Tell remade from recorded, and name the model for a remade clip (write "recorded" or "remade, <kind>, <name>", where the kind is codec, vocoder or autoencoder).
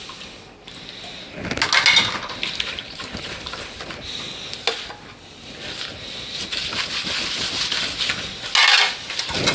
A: recorded